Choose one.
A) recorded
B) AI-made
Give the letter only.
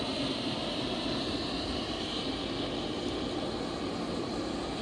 A